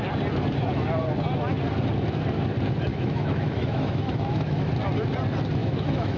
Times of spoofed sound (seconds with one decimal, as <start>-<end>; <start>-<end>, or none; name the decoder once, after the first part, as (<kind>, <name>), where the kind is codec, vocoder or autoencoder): 2.9-4.7 (autoencoder, DAC-VAE); 5.6-6.2